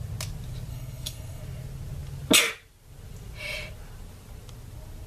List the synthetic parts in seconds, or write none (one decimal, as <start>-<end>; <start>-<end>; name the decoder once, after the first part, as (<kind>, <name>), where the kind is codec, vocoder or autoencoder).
0.7-1.4 (codec, SNAC)